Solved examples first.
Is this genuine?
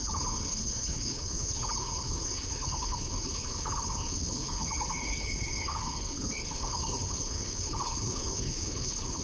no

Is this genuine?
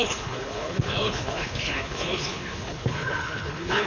no